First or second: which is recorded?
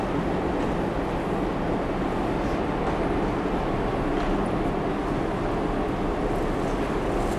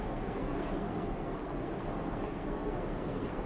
first